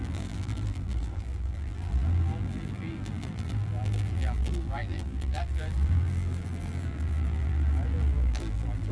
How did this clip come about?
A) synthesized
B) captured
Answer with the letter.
A